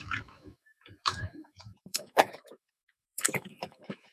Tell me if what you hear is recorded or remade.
remade